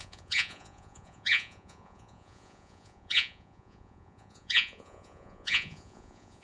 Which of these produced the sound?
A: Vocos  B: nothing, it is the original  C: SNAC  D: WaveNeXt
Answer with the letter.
A